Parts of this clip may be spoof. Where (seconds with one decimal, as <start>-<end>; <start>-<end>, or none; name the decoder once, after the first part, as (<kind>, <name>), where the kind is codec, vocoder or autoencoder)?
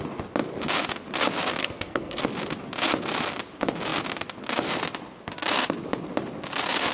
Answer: 1.6-2.2 (codec, SNAC)